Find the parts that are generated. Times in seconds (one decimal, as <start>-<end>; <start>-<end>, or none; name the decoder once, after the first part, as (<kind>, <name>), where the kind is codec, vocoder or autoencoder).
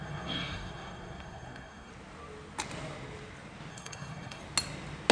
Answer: 0.0-1.9 (codec, SNAC); 3.7-4.4